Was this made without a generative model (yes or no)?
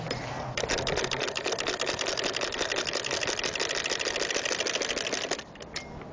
yes